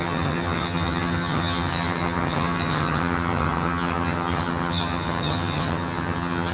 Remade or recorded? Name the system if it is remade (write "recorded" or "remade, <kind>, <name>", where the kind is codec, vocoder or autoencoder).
remade, vocoder, HiFi-GAN